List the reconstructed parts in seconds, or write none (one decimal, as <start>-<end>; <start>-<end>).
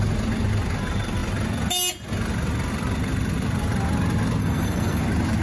4.4-5.0